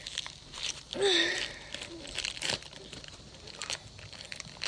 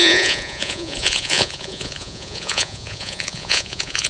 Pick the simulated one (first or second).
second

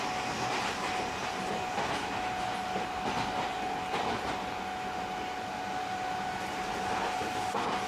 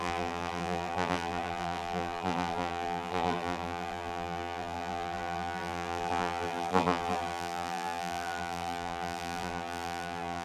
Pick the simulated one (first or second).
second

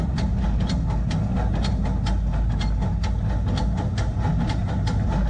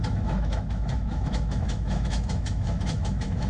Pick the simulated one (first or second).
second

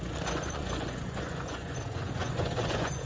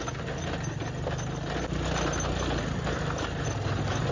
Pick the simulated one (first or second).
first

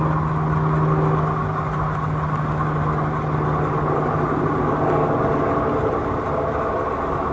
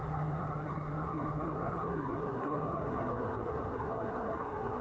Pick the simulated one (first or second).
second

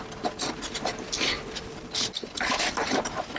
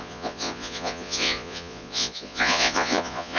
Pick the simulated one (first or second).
second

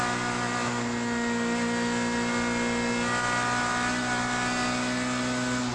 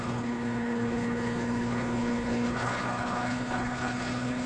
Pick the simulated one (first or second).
second